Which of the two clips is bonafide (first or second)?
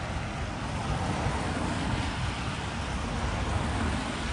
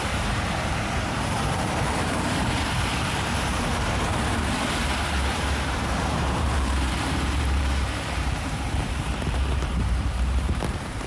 first